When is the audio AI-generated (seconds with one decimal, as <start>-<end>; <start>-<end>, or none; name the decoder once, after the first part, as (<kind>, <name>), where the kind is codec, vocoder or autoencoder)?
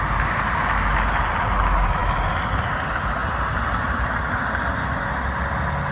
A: none